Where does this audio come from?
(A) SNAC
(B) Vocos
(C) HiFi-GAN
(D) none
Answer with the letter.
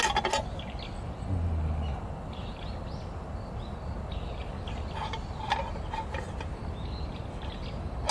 D